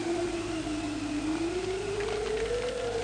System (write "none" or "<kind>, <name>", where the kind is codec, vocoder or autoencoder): none